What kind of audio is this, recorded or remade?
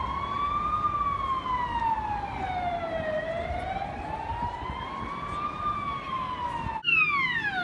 recorded